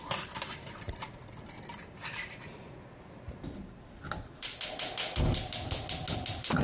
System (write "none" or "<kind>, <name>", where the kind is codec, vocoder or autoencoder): none